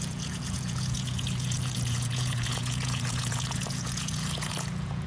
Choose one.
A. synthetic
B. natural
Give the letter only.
A